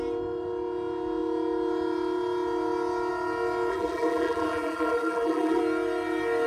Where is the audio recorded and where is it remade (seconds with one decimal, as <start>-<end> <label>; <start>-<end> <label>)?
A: 0.0-3.7 recorded; 3.7-5.6 remade; 5.6-6.5 recorded